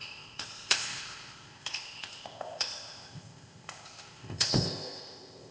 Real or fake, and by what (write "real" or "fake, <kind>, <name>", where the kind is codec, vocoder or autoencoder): fake, codec, ZipCodec